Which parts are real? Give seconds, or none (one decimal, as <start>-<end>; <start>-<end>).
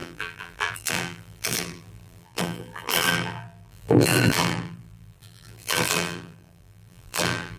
none